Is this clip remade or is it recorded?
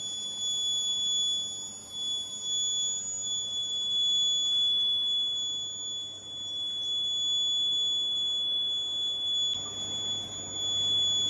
recorded